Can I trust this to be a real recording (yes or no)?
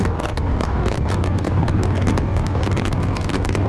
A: no